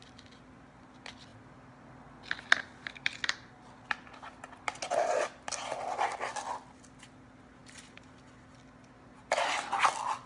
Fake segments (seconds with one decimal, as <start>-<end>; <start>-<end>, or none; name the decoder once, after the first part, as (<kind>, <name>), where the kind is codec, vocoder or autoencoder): none